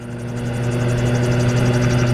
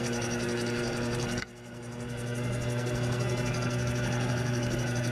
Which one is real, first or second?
first